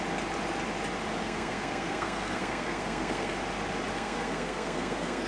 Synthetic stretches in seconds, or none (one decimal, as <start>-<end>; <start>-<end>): 1.2-3.3; 3.9-5.3